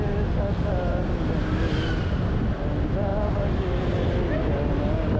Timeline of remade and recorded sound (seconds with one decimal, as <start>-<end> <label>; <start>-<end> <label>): 0.0-5.2 recorded